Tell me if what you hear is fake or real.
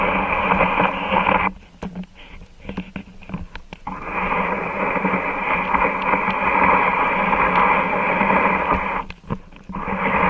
real